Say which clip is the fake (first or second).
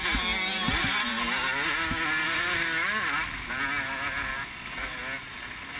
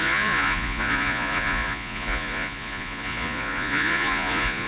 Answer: second